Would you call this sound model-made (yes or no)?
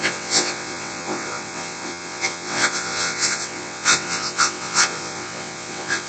yes